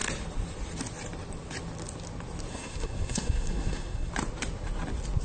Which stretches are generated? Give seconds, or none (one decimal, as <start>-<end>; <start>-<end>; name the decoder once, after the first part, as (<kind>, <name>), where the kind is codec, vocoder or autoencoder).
2.5-4.1 (codec, SNAC)